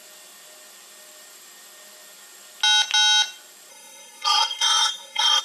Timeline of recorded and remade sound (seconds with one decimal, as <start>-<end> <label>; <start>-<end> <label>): 0.0-3.7 recorded; 3.7-5.4 remade